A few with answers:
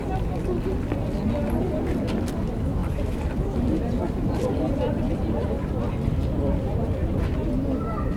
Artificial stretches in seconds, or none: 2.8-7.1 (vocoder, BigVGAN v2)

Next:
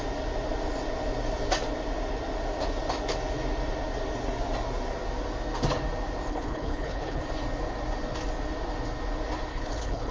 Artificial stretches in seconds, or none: 6.3-7.2 (codec, HILCodec); 9.5-10.1

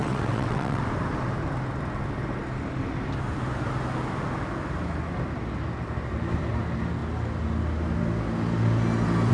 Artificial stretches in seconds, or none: 0.0-0.8 (vocoder, WaveNeXt)

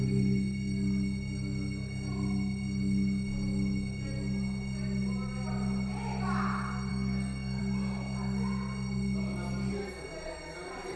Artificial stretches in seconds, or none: 6.9-7.6 (codec, SNAC)

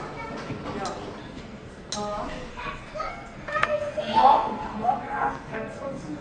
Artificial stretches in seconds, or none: 1.2-1.9 (codec, SNAC); 2.5-6.2

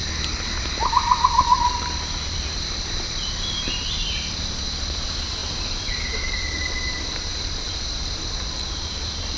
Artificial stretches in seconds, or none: 0.6-5.4 (vocoder, BigVGAN v2); 6.1-9.4

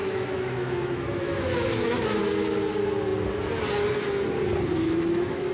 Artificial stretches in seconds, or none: 0.0-2.2 (autoencoder, DAC-VAE); 4.7-5.5

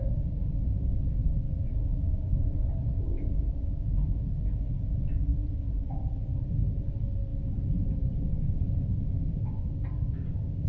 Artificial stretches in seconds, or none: none